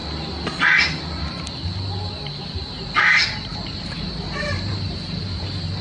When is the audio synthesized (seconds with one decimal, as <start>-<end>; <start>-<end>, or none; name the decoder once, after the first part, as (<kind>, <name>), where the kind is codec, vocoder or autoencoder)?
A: 3.5-5.8 (vocoder, BigVGAN v2)